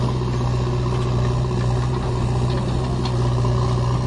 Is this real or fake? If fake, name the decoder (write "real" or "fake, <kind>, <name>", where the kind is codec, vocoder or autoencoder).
real